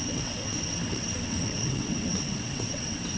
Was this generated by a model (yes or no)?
yes